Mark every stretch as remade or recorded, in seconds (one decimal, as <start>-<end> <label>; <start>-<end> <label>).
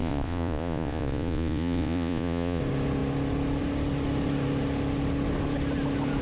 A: 0.0-2.6 remade; 2.6-6.2 recorded